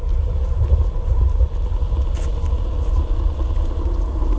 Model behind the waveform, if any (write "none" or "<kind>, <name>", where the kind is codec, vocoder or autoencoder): none